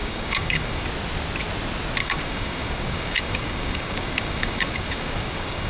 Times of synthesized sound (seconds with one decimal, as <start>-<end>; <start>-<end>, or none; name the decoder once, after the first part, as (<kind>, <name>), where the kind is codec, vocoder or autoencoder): 0.0-0.8 (codec, DAC); 2.0-5.7